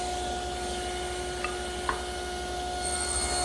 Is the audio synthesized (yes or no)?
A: no